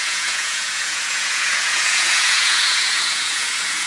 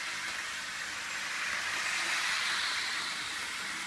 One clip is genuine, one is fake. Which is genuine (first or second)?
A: second